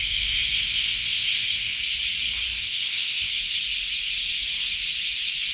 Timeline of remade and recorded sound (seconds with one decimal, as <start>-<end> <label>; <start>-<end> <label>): 0.0-1.8 remade; 1.8-2.6 recorded; 2.6-3.3 remade; 3.3-5.5 recorded